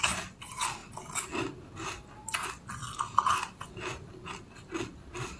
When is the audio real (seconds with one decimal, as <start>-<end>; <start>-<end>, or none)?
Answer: 0.0-5.4